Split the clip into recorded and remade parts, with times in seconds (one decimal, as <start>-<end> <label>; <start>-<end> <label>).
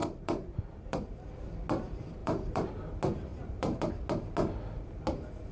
0.0-1.3 remade; 1.3-2.2 recorded; 2.2-2.7 remade; 2.7-3.3 recorded; 3.3-3.9 remade; 3.9-5.5 recorded